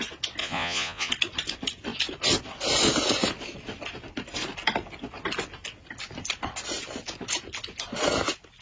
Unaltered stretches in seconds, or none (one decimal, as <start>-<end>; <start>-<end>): 0.0-0.4; 1.1-8.6